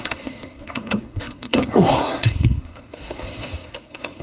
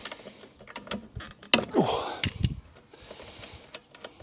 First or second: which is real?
second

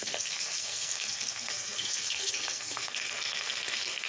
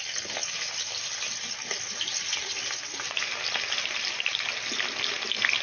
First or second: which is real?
second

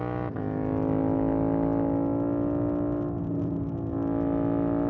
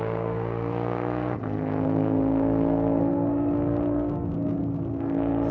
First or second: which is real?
first